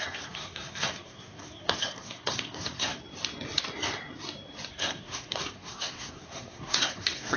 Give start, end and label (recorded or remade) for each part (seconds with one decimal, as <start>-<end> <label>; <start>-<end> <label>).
0.0-3.0 remade; 3.0-4.7 recorded; 4.7-7.4 remade